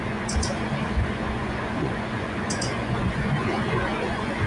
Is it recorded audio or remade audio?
remade